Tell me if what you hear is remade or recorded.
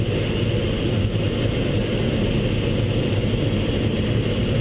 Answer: recorded